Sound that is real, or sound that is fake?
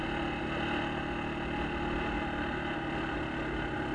real